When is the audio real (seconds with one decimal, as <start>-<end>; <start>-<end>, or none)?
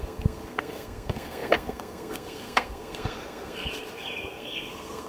none